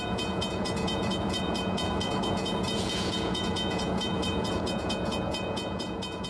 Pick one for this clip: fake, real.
fake